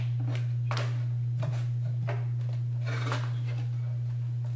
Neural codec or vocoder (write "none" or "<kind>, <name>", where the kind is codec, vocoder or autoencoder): none